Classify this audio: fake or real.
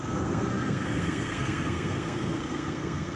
fake